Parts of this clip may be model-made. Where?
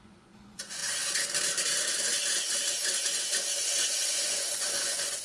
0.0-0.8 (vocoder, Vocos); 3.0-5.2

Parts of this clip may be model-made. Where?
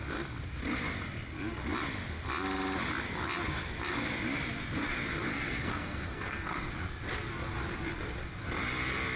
5.3-6.7 (codec, SNAC)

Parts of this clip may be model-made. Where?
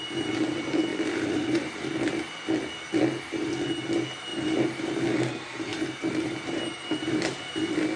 0.9-1.9 (vocoder, BigVGAN v2); 4.3-5.1; 5.7-6.6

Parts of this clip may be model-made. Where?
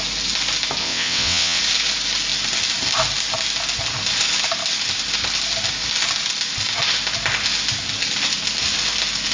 0.8-1.6 (vocoder, WaveNeXt)